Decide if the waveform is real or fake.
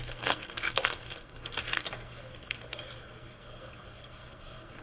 fake